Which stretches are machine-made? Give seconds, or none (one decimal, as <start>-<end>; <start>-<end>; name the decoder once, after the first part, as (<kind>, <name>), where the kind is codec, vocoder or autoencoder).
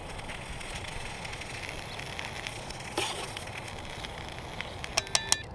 0.0-1.6 (vocoder, Vocos); 2.5-3.7